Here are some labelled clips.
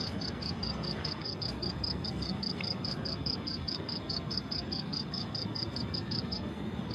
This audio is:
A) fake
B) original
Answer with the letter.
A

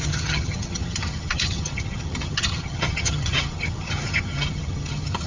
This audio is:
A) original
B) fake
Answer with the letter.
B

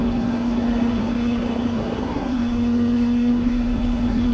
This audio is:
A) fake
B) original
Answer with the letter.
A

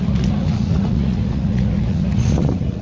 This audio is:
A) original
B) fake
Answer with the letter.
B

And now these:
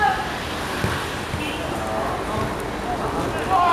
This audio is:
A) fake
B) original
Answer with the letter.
B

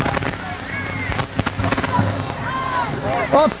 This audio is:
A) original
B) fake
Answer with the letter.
A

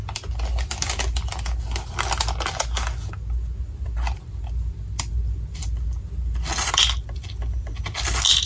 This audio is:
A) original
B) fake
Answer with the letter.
A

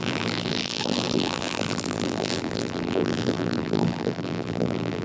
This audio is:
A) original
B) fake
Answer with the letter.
B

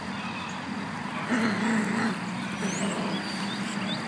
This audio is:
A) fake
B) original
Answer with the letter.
B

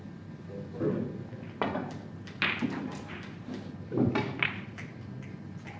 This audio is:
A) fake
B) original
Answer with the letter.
B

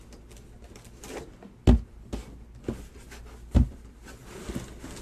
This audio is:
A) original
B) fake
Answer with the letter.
A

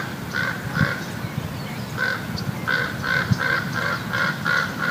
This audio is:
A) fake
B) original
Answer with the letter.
B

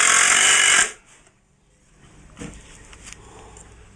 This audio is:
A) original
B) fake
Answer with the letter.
A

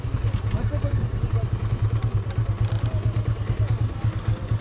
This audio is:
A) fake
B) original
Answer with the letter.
B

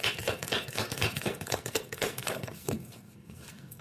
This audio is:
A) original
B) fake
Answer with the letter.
B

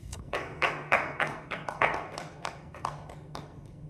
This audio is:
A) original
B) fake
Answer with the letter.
B